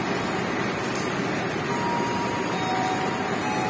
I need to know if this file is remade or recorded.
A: recorded